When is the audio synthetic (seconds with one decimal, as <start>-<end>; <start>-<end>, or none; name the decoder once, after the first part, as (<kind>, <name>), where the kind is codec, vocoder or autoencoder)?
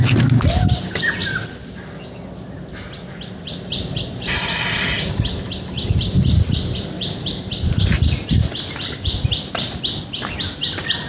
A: none